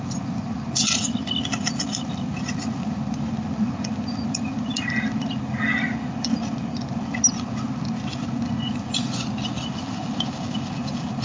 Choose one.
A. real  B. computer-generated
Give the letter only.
A